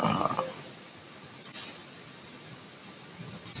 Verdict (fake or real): real